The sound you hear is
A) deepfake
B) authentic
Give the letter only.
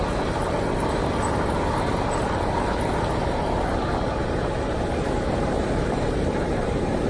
A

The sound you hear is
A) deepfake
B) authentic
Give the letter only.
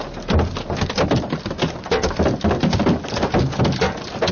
B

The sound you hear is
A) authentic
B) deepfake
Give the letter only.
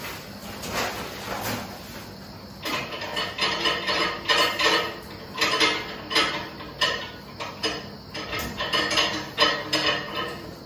A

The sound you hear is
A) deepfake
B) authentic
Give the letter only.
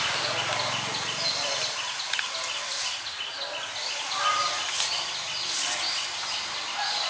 B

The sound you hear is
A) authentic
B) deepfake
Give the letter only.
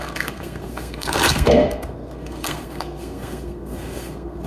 B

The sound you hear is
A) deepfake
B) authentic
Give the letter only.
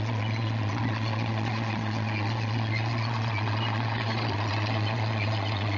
A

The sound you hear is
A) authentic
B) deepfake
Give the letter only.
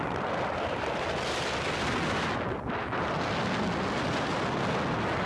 A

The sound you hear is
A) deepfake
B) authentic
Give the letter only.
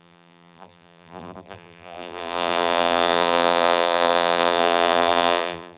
A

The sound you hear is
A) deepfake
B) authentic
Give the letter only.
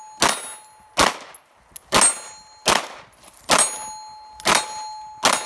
B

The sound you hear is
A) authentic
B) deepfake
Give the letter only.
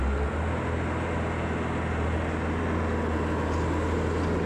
A